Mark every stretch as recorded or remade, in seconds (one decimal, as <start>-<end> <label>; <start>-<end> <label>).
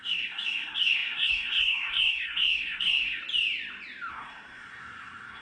0.0-3.2 remade; 3.2-4.1 recorded; 4.1-5.4 remade